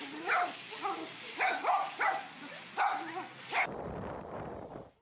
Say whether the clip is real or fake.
real